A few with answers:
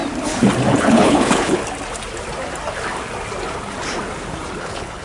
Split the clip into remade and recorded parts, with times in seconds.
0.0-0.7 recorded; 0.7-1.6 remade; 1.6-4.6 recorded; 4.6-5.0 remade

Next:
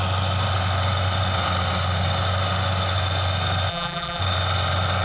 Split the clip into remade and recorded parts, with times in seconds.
0.0-3.7 recorded; 3.7-4.2 remade; 4.2-5.0 recorded

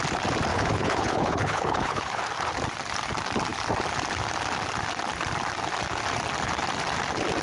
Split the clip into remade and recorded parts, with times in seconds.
0.0-0.5 recorded; 0.5-2.2 remade; 2.2-7.4 recorded

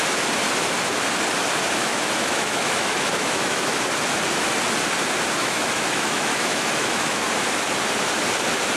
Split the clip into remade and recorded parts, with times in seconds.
0.0-1.8 recorded; 1.8-3.8 remade; 3.8-5.4 recorded; 5.4-7.2 remade; 7.2-8.8 recorded